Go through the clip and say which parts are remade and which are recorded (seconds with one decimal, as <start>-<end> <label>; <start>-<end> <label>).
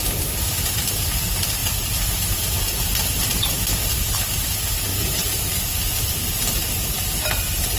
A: 0.0-1.6 recorded; 1.6-3.0 remade; 3.0-4.9 recorded; 4.9-5.5 remade; 5.5-7.8 recorded